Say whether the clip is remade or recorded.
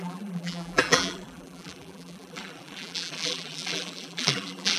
remade